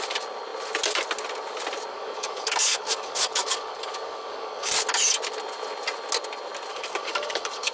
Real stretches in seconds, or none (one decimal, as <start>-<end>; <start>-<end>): 0.0-1.9; 4.7-6.7